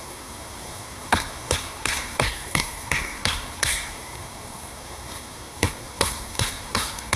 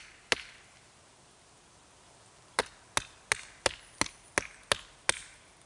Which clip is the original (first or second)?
second